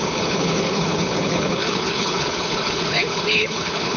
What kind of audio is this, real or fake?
fake